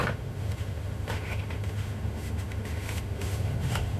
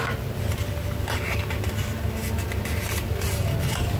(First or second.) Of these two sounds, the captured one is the second